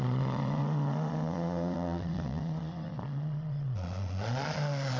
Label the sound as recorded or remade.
remade